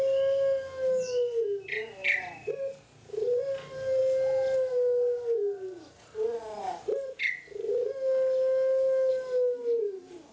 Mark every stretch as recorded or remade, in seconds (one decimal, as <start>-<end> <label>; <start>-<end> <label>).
0.0-10.3 recorded